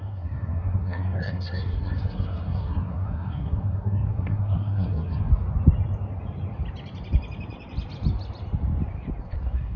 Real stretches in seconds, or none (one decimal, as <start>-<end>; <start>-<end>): 5.3-9.2